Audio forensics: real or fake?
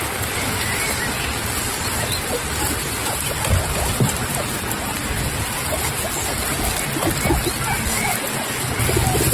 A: real